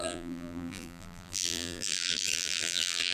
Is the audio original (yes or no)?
no